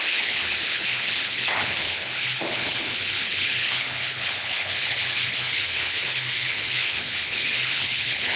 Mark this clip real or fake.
fake